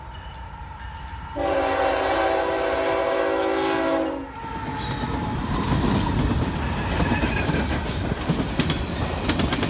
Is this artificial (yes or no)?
no